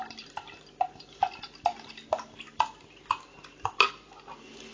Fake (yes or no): no